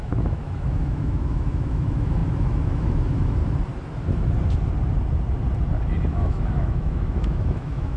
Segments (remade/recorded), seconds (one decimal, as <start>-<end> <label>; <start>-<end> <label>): 0.0-3.4 remade; 3.4-6.1 recorded; 6.1-8.0 remade